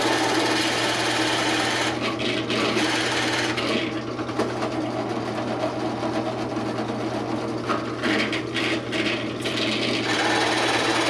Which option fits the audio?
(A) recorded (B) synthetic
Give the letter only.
A